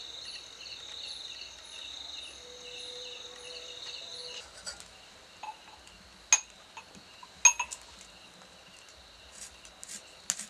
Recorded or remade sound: recorded